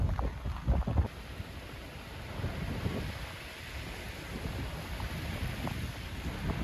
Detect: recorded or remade recorded